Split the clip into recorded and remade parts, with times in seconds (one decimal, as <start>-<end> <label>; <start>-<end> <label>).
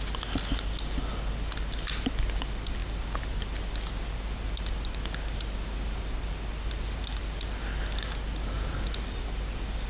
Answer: 0.0-9.9 recorded